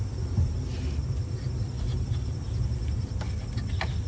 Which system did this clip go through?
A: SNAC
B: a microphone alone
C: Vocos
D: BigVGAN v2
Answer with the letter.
B